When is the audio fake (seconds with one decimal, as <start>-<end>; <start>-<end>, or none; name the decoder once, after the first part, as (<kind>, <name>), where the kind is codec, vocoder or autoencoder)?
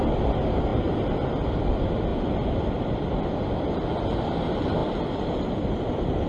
none